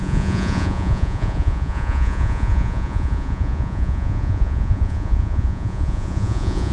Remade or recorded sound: remade